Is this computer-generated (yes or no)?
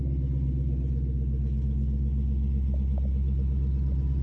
no